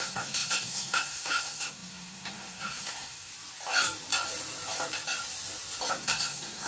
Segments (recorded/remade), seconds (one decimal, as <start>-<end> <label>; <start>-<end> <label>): 0.0-3.3 remade; 3.3-5.9 recorded; 5.9-6.7 remade